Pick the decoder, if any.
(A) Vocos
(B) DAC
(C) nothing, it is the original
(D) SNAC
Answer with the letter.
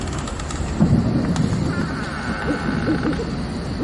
C